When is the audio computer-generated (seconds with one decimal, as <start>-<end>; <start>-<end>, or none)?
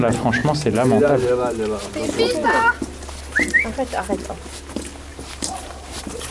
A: 5.1-6.3